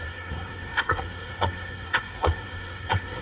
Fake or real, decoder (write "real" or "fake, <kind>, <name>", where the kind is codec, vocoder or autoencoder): fake, codec, SNAC